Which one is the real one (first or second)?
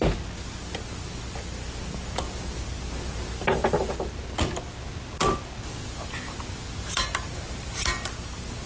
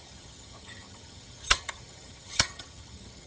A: first